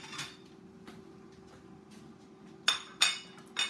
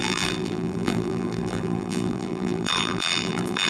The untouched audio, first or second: first